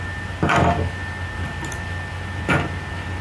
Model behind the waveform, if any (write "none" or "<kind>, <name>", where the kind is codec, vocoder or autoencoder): none